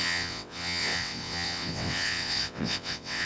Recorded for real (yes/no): no